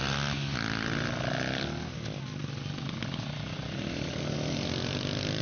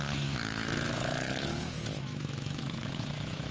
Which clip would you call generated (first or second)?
second